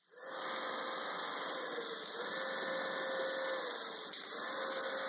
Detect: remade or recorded recorded